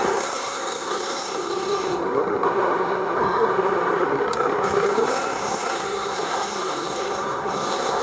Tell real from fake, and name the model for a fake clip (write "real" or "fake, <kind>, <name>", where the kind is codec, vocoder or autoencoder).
fake, codec, SNAC